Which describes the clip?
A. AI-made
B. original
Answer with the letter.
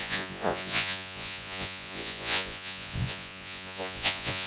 A